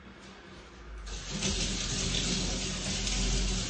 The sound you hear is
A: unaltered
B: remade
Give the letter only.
A